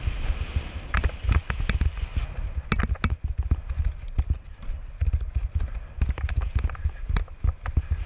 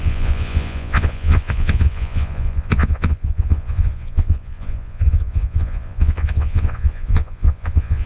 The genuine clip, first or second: first